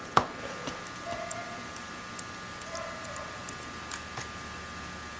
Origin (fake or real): real